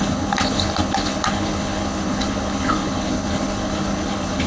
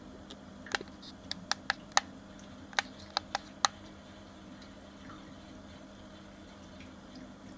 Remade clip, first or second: first